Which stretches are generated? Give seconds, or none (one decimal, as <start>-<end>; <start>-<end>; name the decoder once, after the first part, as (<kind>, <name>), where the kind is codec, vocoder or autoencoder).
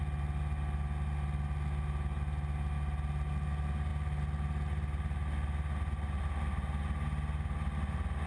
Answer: none